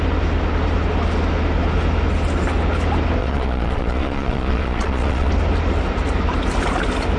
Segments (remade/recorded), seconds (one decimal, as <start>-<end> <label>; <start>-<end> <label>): 0.0-3.2 recorded; 3.2-5.3 remade; 5.3-7.2 recorded